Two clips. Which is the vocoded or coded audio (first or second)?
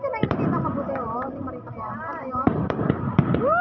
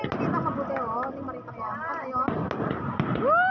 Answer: first